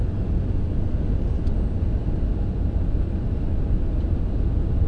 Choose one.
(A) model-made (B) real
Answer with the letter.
B